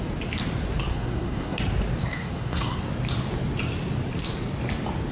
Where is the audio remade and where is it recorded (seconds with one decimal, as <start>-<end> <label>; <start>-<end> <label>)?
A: 0.0-0.9 recorded; 0.9-1.6 remade; 1.6-2.0 recorded; 2.0-2.8 remade; 2.8-5.1 recorded

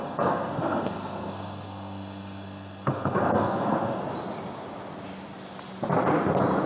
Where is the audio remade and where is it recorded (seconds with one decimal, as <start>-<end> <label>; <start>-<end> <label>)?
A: 0.0-4.0 remade; 4.0-6.7 recorded

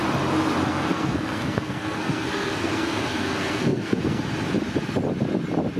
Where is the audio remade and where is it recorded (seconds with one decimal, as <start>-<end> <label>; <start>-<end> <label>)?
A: 0.0-0.7 recorded; 0.7-4.2 remade; 4.2-5.8 recorded

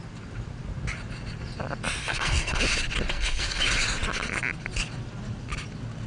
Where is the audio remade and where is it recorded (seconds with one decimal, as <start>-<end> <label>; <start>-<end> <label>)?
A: 0.0-2.0 recorded; 2.0-2.6 remade; 2.6-3.1 recorded; 3.1-3.6 remade; 3.6-6.1 recorded

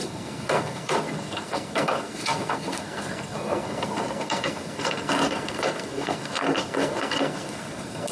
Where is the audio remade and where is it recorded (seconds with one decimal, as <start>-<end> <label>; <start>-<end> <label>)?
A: 0.0-8.1 remade

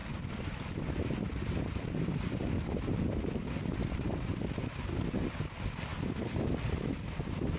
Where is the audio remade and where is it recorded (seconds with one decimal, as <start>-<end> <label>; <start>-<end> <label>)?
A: 0.0-7.6 recorded